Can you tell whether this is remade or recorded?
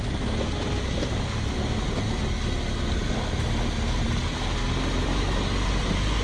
recorded